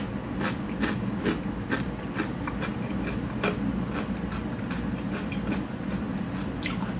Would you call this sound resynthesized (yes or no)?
no